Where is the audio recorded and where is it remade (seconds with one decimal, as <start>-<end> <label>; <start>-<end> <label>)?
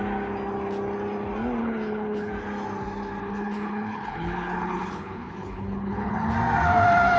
0.0-1.6 recorded; 1.6-2.3 remade; 2.3-3.2 recorded; 3.2-6.3 remade; 6.3-7.2 recorded